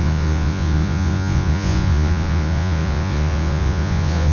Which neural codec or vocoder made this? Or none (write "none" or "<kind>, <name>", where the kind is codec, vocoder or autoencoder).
vocoder, Vocos